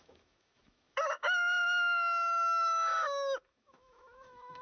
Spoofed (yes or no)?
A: yes